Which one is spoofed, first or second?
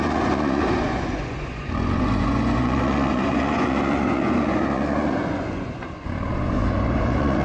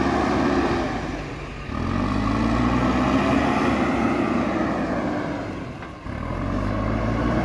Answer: first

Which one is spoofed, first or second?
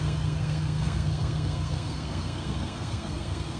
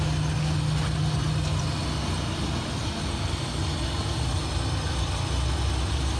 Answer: first